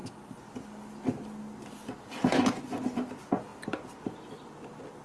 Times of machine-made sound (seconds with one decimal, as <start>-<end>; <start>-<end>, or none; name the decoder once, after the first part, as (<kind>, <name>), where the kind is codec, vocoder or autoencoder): none